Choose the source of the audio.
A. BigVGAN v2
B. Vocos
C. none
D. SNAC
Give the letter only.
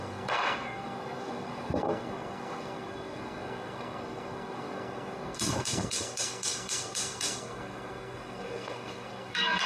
D